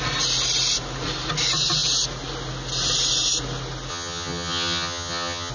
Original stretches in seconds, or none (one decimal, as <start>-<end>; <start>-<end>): 0.0-3.9